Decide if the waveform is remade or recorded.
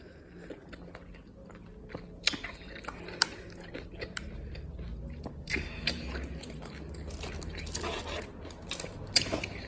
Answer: recorded